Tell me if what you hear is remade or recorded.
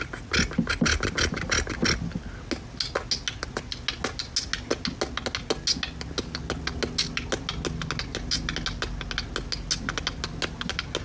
recorded